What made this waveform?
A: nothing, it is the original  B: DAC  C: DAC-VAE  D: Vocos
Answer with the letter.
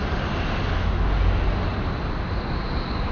A